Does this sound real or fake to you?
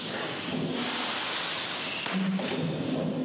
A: real